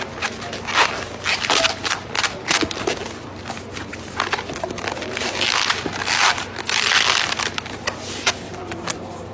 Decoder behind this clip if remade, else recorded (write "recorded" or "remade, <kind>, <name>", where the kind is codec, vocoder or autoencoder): recorded